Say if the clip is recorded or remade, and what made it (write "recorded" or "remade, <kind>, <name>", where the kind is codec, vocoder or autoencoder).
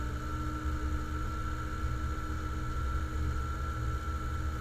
recorded